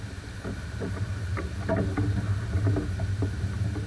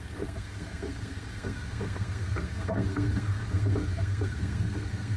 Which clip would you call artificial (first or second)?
second